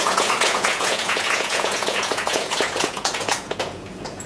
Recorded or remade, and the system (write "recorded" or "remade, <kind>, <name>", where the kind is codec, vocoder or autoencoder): remade, vocoder, Vocos